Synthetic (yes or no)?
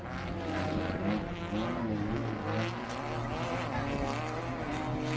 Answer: no